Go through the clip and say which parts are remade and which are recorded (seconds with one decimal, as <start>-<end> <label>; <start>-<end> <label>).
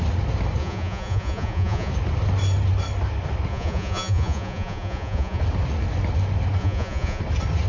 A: 0.0-0.6 recorded; 0.6-1.9 remade; 1.9-3.5 recorded; 3.5-5.4 remade; 5.4-6.6 recorded; 6.6-7.2 remade; 7.2-7.7 recorded